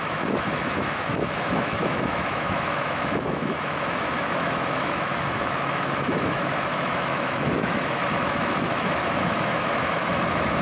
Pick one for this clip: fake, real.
fake